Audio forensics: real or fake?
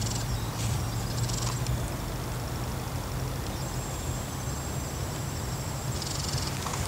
real